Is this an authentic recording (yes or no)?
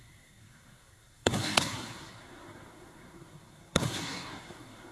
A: no